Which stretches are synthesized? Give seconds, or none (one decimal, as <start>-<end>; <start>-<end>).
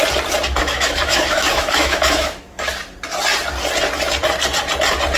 0.6-2.7